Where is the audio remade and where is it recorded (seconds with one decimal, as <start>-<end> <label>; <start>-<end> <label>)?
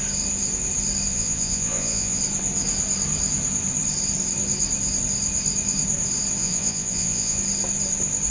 0.0-1.1 recorded; 1.1-2.2 remade; 2.2-6.4 recorded; 6.4-7.4 remade; 7.4-8.3 recorded